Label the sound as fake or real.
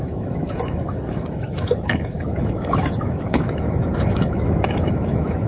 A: fake